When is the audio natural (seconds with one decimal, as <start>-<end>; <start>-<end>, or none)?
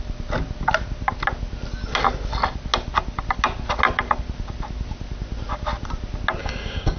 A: 0.0-6.4